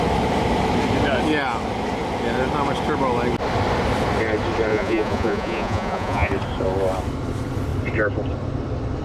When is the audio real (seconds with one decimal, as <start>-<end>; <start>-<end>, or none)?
0.0-4.7; 6.3-9.0